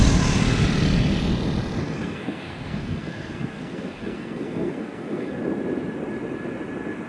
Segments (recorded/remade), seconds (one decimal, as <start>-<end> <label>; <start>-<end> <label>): 0.0-1.8 recorded; 1.8-5.4 remade; 5.4-7.1 recorded